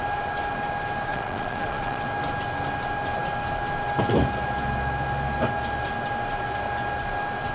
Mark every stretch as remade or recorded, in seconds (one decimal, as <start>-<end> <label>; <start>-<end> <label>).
0.0-1.1 recorded; 1.1-2.0 remade; 2.0-7.5 recorded